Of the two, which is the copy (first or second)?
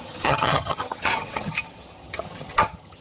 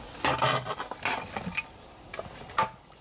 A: first